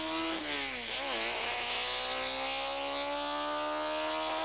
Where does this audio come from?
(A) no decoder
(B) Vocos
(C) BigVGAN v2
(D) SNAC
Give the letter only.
A